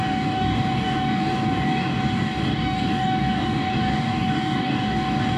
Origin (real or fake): fake